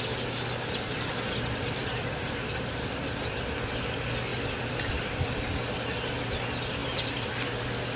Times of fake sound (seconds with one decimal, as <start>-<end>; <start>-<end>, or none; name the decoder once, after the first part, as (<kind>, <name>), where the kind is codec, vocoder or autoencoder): none